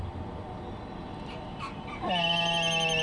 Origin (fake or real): real